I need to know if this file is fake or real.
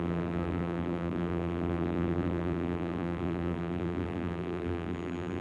fake